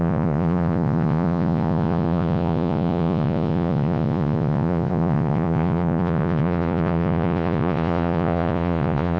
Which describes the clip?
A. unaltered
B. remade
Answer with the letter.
B